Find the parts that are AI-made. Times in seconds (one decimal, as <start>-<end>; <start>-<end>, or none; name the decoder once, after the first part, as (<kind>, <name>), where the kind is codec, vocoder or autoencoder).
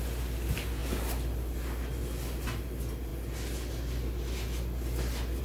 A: none